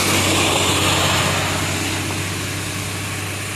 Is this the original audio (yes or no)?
yes